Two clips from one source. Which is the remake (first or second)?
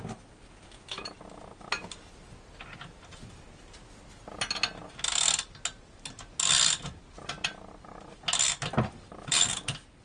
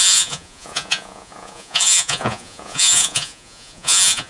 second